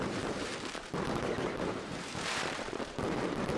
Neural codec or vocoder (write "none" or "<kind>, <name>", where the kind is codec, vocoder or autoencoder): vocoder, BigVGAN v2